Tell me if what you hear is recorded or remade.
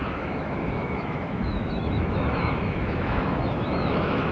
remade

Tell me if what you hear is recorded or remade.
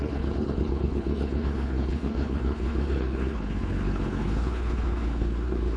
remade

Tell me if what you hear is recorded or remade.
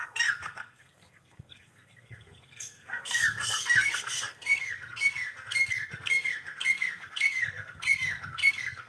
remade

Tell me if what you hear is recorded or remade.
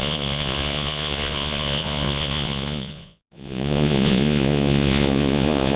remade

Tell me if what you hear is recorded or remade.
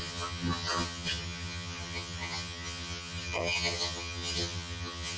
remade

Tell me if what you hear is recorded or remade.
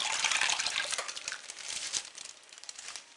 remade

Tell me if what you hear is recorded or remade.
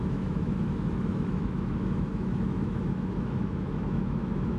remade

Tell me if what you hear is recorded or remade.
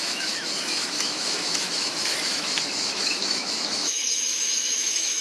remade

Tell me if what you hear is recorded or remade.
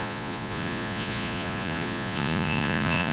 remade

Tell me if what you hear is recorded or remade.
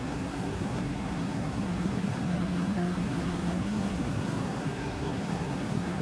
remade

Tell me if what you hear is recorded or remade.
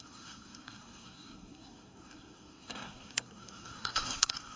remade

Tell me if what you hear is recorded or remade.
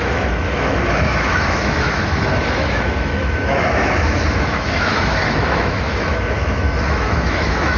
remade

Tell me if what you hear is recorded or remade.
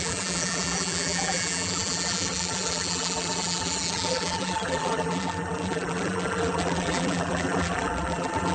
remade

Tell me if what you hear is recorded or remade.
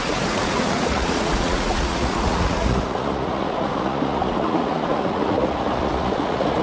remade